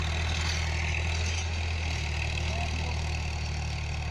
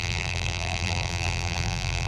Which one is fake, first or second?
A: second